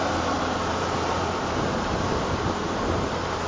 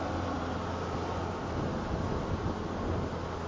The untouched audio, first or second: second